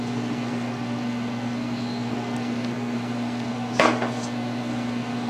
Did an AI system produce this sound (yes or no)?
yes